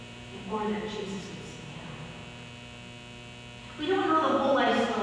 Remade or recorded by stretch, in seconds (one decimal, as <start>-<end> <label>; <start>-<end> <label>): 0.0-2.2 remade; 2.2-3.6 recorded; 3.6-5.0 remade